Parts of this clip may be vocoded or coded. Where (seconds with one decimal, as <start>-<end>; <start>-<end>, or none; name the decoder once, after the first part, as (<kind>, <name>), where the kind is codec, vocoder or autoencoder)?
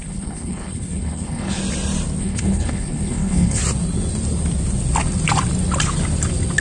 0.0-1.6 (codec, HILCodec); 2.2-3.6